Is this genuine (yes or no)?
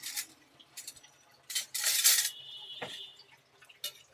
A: yes